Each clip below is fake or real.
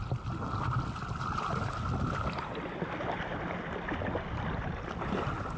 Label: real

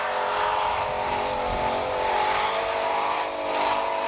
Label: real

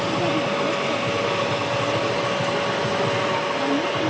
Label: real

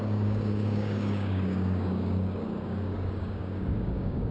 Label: fake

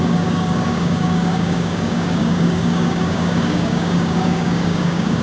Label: fake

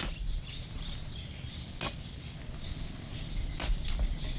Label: real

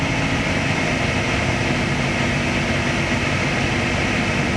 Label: real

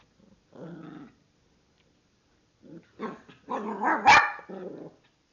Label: real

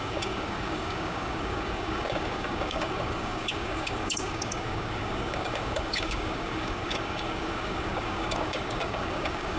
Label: fake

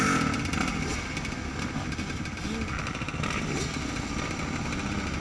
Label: real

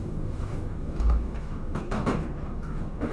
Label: fake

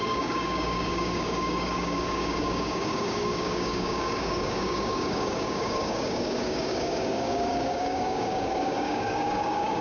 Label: fake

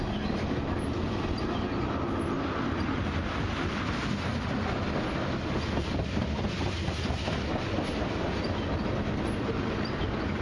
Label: real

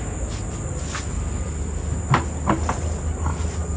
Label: real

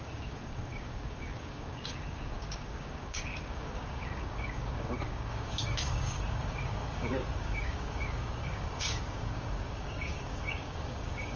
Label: fake